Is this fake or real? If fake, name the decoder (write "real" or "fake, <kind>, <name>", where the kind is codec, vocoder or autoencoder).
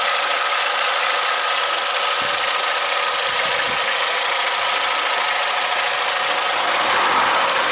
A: real